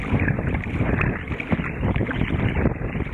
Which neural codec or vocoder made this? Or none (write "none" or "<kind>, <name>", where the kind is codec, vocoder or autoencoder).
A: none